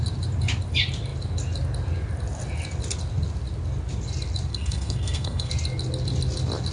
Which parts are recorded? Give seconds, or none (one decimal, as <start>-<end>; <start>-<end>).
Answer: 0.0-4.5; 5.5-6.7